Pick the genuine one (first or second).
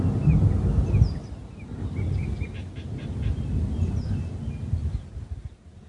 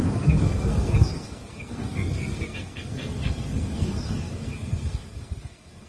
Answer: first